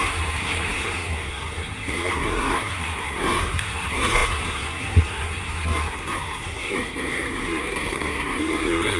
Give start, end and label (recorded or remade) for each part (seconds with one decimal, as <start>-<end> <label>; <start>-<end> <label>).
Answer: 0.0-9.0 remade